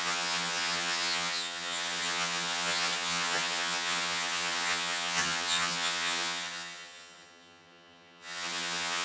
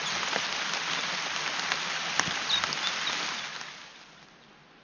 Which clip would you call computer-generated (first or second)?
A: first